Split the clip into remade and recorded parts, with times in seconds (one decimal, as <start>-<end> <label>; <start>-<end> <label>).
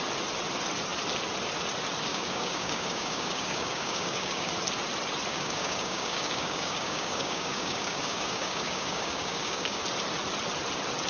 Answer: 0.0-2.1 recorded; 2.1-4.5 remade; 4.5-5.3 recorded; 5.3-9.8 remade; 9.8-11.1 recorded